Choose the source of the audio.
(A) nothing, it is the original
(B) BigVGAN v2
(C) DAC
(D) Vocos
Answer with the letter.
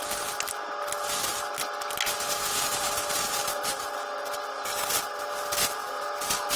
A